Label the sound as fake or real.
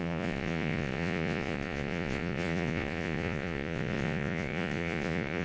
fake